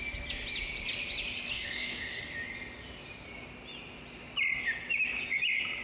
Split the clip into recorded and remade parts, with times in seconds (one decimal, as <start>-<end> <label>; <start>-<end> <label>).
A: 0.0-1.5 recorded; 1.5-2.2 remade; 2.2-5.8 recorded